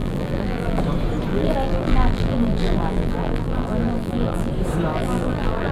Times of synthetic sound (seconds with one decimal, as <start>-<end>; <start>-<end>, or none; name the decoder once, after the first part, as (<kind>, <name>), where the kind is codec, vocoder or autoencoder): 0.0-0.8 (vocoder, BigVGAN v2); 1.3-4.5; 4.9-5.7